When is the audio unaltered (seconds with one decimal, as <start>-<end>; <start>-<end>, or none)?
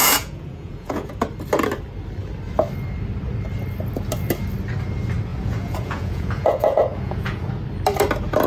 1.1-5.3; 7.5-8.5